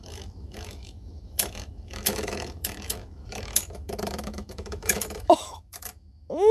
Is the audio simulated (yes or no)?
yes